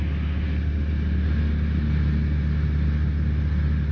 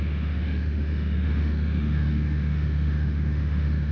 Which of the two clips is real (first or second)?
first